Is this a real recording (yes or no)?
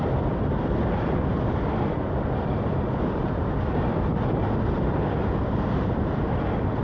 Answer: yes